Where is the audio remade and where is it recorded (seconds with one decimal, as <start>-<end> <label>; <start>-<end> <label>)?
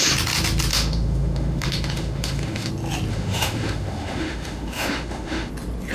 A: 0.0-0.7 recorded; 0.7-2.7 remade; 2.7-3.1 recorded; 3.1-5.5 remade; 5.5-5.9 recorded